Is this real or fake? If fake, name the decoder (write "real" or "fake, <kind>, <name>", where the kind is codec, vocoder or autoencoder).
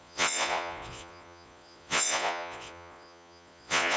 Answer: fake, vocoder, Vocos